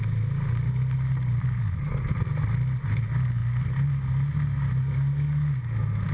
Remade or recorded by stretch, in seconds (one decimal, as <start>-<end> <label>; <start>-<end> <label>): 0.0-6.1 recorded